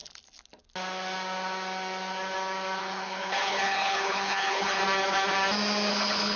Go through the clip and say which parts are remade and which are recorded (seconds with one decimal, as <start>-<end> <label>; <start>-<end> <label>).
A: 0.0-2.8 recorded; 2.8-4.8 remade; 4.8-5.9 recorded; 5.9-6.4 remade